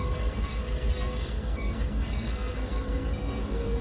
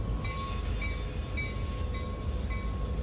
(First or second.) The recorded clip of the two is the second